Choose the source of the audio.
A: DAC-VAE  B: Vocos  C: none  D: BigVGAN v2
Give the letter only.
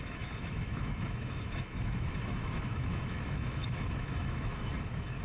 A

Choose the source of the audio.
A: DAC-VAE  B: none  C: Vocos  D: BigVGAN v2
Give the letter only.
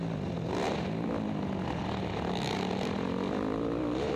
B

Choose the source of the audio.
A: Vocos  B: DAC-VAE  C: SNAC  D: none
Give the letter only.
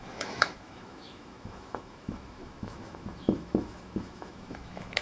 B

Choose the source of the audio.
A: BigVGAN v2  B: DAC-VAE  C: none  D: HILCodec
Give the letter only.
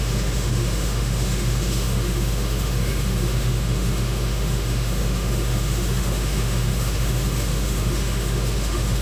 B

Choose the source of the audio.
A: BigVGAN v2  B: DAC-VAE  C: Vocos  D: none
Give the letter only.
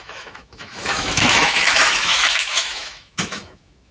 B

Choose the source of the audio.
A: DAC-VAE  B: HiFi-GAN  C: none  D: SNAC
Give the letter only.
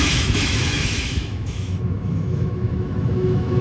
A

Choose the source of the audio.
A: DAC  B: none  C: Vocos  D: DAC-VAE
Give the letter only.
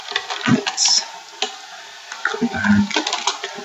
B